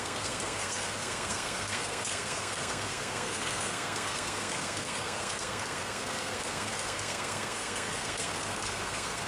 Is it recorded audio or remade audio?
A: remade